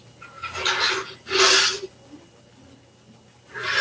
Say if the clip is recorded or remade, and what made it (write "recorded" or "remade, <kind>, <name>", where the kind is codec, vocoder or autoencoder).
recorded